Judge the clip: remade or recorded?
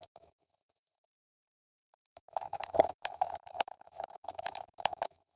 remade